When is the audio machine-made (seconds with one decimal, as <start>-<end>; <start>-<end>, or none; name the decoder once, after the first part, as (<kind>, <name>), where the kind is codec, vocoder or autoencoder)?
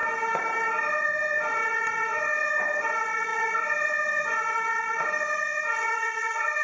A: 0.9-6.6 (vocoder, Vocos)